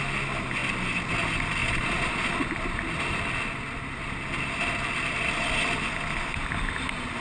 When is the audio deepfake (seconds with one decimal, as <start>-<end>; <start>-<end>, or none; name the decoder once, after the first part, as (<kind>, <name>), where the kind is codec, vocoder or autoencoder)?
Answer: 1.6-2.3 (vocoder, Vocos)